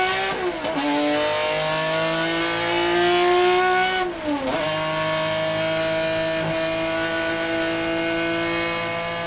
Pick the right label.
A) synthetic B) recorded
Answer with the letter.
B